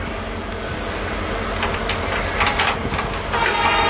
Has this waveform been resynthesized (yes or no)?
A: no